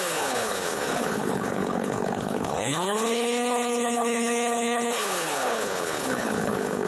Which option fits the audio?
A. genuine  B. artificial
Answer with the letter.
B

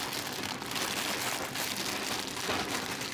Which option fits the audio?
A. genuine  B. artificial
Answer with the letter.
A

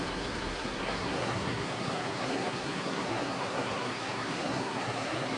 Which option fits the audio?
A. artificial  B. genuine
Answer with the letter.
A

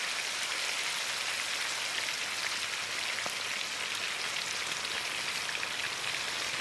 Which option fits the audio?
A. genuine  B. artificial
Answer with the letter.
A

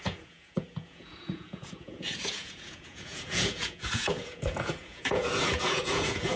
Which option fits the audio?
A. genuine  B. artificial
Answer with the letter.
B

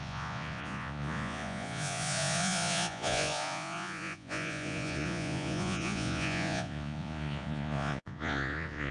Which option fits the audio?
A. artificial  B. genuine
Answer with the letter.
A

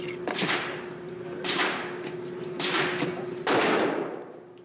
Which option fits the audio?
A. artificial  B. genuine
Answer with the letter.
A